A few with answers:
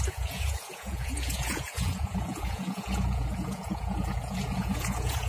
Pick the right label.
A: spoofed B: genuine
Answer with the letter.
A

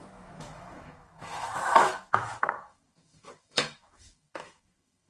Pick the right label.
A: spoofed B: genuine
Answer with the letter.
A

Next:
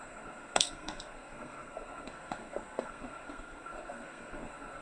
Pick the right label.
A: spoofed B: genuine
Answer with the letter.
A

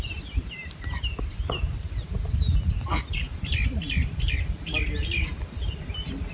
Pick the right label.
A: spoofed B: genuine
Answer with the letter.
B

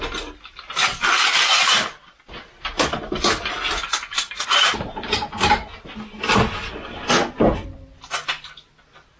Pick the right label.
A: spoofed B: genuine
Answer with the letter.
B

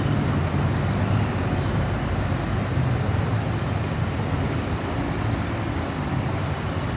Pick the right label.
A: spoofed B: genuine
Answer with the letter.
B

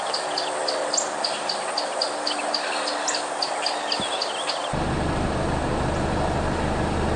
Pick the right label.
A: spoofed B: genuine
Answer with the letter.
B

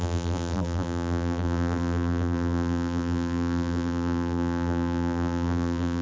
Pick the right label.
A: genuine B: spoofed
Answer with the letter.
B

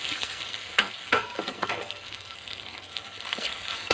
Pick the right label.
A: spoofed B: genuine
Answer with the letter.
A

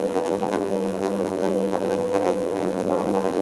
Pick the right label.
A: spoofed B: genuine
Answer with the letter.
A